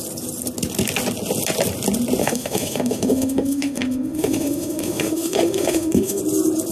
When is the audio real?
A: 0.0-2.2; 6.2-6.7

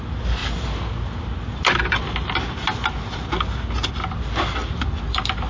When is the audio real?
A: 0.0-5.5